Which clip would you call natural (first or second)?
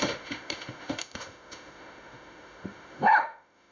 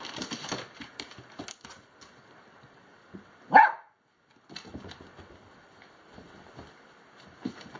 second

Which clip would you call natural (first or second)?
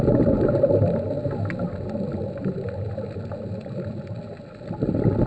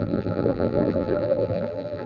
first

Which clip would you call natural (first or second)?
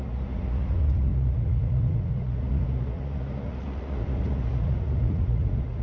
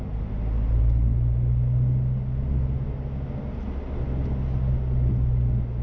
second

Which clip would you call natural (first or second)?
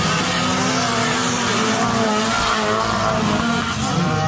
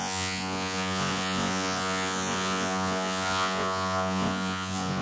first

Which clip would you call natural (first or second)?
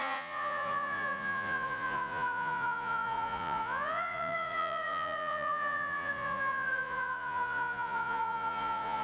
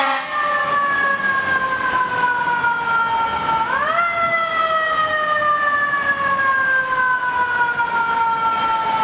second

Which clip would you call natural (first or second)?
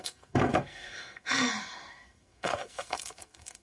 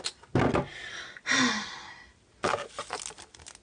second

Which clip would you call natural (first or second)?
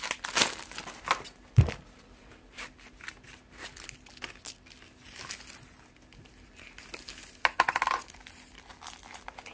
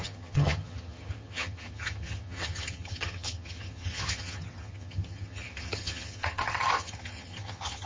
first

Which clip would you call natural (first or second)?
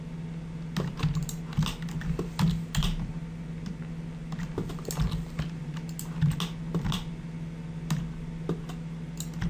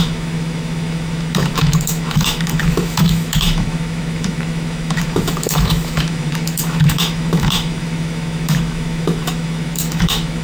first